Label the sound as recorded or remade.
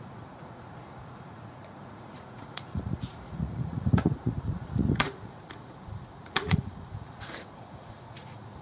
remade